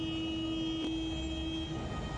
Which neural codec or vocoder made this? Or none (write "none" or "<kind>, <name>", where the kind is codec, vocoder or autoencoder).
none